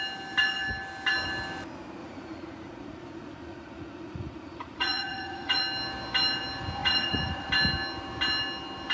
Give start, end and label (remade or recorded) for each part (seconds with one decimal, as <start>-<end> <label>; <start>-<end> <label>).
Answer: 0.0-2.0 recorded; 2.0-5.6 remade; 5.6-6.8 recorded; 6.8-7.5 remade; 7.5-8.9 recorded